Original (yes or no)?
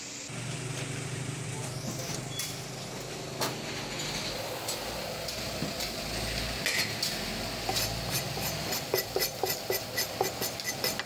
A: yes